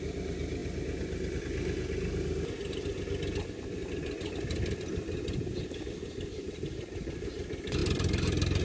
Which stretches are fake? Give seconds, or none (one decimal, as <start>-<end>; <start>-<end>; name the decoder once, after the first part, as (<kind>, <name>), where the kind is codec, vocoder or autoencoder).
none